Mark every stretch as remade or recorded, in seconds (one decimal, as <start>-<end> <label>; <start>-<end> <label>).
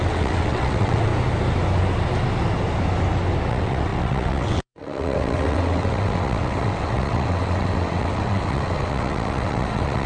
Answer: 0.0-1.1 remade; 1.1-3.5 recorded; 3.5-10.1 remade